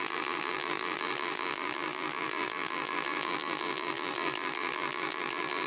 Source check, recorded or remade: remade